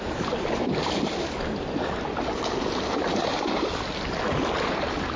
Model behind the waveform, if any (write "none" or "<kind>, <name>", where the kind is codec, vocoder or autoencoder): none